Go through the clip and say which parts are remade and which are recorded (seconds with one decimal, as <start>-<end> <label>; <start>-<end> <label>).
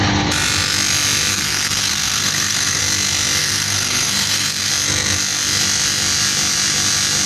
0.0-1.3 recorded; 1.3-2.8 remade; 2.8-3.4 recorded; 3.4-4.7 remade; 4.7-7.3 recorded